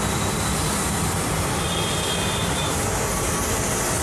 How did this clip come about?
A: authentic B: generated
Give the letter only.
A